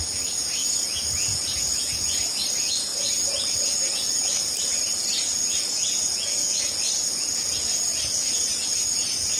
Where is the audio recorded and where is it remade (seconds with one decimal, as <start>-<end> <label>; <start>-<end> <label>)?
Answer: 0.0-9.4 remade